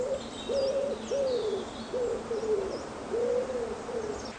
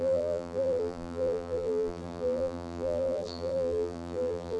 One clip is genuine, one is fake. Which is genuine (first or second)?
first